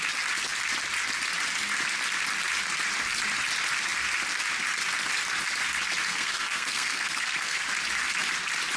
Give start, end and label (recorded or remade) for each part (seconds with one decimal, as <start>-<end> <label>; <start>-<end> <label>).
0.0-6.1 recorded; 6.1-7.6 remade; 7.6-8.8 recorded